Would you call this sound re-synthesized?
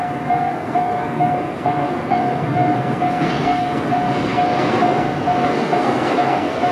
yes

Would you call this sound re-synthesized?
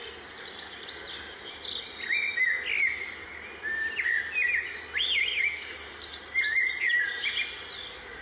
no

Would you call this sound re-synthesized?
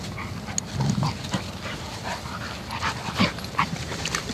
no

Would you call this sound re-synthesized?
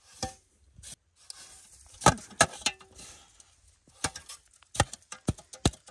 no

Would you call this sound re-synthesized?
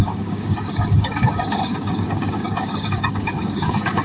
yes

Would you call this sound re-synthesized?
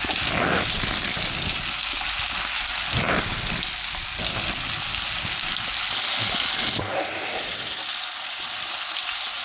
no